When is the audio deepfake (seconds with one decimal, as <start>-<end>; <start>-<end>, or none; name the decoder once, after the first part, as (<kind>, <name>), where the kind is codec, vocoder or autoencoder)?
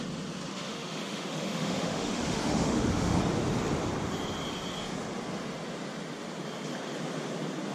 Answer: 0.5-3.2 (autoencoder, DAC-VAE)